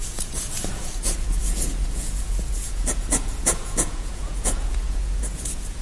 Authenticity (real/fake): fake